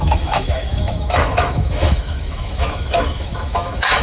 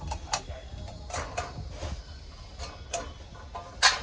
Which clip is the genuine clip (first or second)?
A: second